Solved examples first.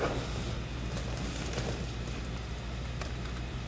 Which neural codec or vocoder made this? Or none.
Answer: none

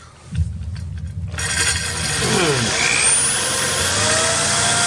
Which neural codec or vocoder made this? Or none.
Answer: none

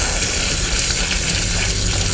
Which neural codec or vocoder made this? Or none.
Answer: none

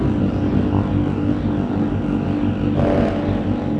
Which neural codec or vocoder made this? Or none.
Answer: none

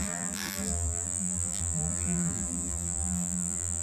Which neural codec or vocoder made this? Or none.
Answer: vocoder, BigVGAN v2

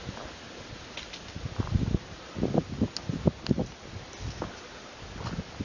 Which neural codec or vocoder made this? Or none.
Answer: none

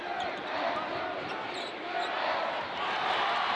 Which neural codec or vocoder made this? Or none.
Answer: none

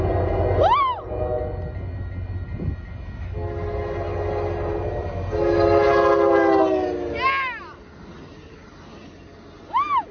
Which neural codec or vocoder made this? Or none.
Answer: none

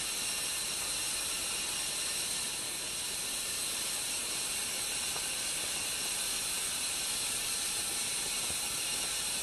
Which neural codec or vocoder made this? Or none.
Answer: none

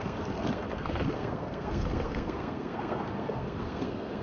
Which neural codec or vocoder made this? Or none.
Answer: codec, SNAC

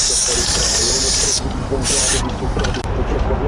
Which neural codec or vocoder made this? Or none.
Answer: none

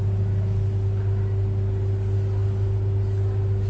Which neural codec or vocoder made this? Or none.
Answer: none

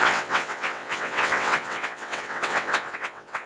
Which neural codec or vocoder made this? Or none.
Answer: vocoder, WaveNeXt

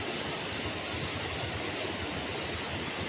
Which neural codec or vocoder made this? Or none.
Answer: none